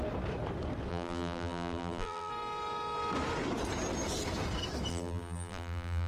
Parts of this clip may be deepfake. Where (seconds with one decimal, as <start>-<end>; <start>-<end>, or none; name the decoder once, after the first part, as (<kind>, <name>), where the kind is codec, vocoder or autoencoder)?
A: 0.9-2.3 (vocoder, BigVGAN v2); 4.9-6.1